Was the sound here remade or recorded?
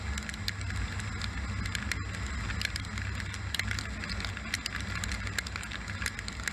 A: recorded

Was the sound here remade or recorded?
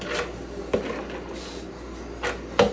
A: recorded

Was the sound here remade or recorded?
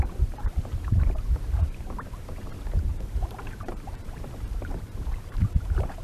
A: remade